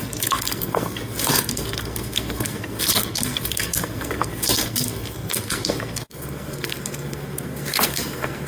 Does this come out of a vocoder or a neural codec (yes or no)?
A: yes